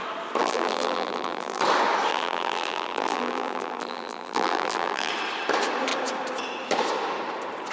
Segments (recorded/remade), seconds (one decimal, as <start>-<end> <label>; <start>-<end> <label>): 0.0-0.4 recorded; 0.4-1.6 remade; 1.6-2.1 recorded; 2.1-5.1 remade; 5.1-7.7 recorded